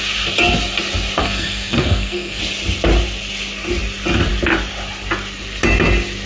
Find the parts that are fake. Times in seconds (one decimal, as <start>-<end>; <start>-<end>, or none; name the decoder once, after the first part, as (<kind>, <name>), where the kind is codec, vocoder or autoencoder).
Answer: 1.2-2.4 (codec, SNAC)